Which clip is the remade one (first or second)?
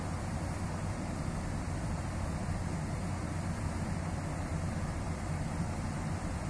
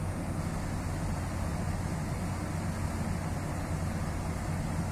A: first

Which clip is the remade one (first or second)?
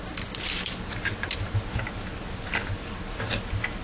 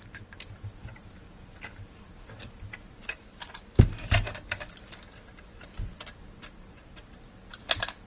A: second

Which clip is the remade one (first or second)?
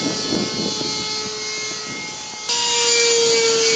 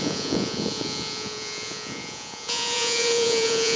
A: second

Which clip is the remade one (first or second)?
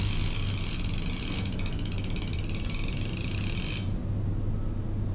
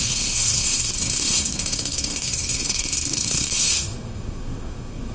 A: second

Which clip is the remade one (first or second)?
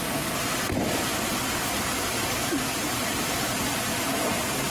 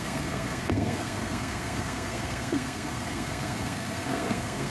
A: second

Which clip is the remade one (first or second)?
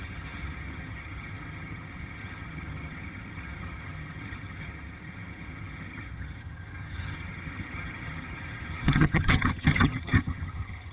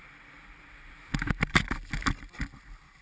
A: first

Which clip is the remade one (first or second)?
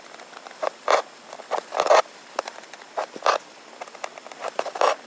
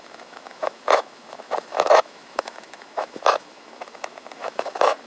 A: second